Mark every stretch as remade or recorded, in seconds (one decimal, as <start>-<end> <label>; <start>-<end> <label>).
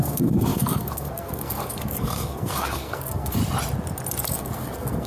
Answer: 0.0-3.4 remade; 3.4-4.3 recorded; 4.3-5.1 remade